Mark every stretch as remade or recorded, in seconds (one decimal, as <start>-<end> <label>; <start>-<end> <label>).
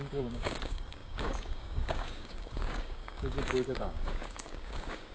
0.0-5.1 remade